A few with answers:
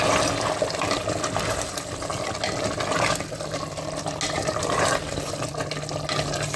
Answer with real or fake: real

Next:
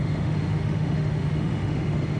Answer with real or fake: fake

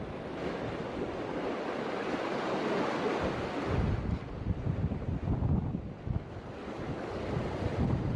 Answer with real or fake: real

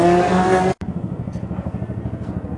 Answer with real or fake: fake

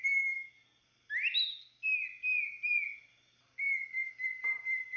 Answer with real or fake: real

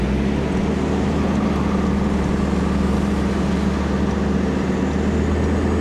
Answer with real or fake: real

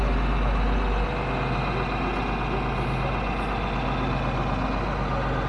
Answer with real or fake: real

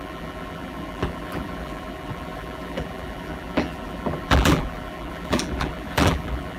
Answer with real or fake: fake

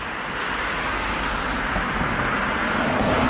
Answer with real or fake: real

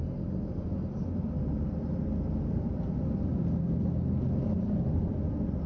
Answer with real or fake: real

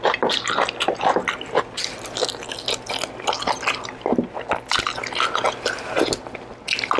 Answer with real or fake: real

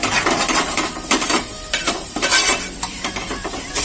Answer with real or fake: fake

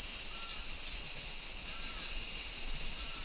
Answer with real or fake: real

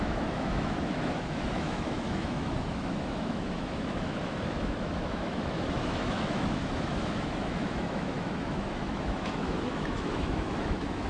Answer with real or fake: fake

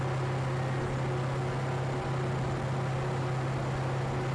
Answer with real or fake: real